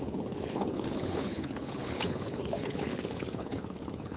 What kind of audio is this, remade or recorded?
remade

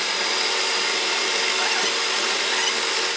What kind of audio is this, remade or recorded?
recorded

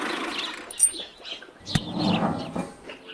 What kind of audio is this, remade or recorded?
recorded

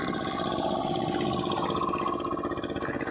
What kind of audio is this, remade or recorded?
recorded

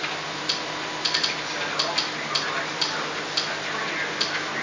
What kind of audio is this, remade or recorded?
recorded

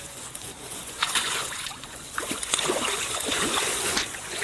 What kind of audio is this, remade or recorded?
remade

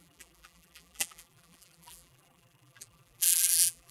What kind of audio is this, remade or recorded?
remade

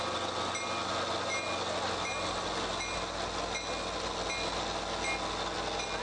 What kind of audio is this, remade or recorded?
recorded